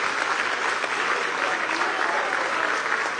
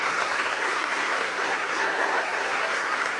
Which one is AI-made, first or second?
second